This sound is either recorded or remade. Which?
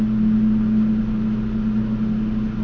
recorded